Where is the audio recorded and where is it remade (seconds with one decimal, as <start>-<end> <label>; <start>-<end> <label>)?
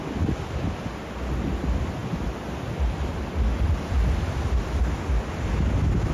0.0-6.1 recorded